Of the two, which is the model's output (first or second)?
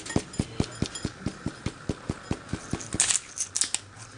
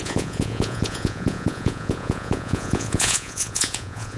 second